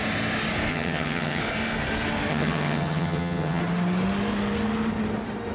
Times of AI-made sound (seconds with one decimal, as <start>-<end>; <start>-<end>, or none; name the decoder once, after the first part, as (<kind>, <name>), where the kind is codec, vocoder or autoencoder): 0.7-1.4 (vocoder, HiFi-GAN); 2.3-3.6